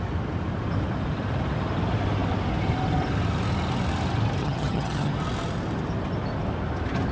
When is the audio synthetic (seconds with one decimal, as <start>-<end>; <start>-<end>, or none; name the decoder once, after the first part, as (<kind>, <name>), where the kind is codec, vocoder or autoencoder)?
4.4-5.1 (vocoder, HiFi-GAN)